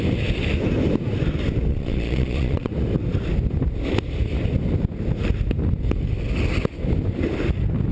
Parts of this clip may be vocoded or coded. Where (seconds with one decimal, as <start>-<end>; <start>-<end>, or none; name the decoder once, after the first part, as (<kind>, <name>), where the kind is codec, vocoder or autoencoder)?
1.7-2.7 (vocoder, Vocos)